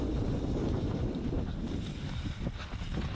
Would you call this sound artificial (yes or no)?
no